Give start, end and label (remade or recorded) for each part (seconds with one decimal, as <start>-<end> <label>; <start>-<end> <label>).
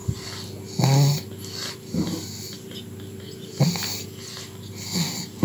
0.0-5.4 recorded